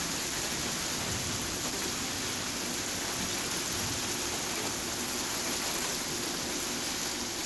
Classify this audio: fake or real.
real